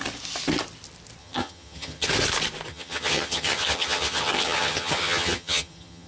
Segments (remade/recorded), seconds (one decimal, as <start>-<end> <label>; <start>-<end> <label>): 0.0-1.2 recorded; 1.2-2.1 remade; 2.1-2.7 recorded; 2.7-6.1 remade